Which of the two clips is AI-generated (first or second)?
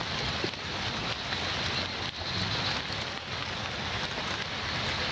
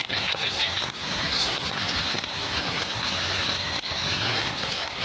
second